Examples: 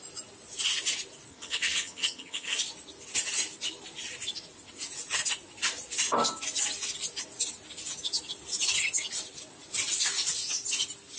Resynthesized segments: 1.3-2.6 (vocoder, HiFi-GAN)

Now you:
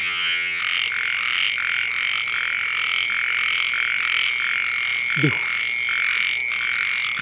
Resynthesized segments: 0.0-0.6 (vocoder, HiFi-GAN)

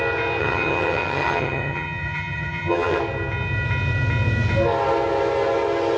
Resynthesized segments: 0.4-3.0 (vocoder, HiFi-GAN)